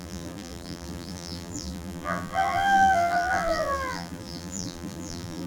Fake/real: fake